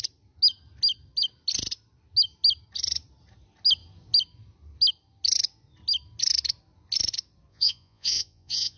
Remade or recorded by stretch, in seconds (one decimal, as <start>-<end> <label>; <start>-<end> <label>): 0.0-7.5 recorded; 7.5-8.8 remade